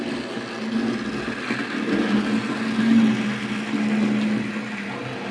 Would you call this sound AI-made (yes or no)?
no